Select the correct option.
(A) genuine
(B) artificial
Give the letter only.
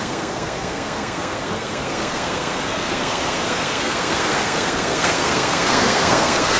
B